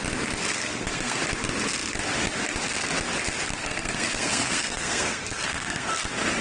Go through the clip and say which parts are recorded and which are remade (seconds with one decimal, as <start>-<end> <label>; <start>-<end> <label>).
0.0-0.5 recorded; 0.5-1.2 remade; 1.2-3.6 recorded; 3.6-5.9 remade; 5.9-6.4 recorded